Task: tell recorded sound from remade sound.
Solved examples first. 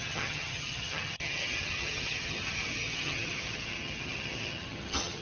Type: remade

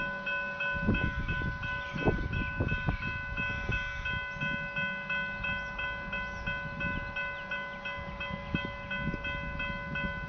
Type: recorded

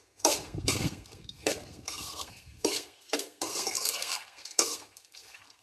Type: remade